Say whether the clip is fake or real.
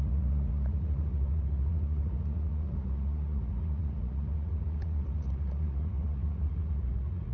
fake